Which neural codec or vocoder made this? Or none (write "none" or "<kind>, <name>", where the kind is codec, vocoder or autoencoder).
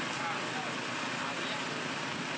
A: none